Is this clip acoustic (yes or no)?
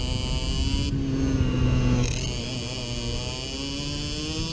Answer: yes